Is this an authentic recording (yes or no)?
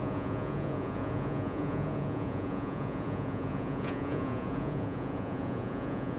no